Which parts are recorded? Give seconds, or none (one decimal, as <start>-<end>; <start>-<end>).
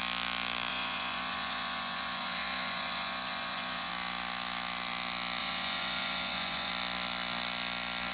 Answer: 0.0-0.7; 3.9-5.4; 6.7-8.1